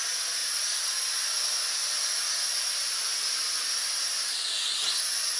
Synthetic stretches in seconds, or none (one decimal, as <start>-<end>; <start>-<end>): none